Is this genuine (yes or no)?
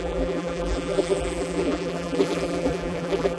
no